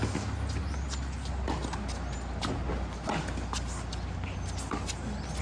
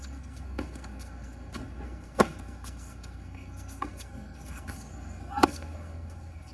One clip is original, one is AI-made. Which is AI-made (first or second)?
second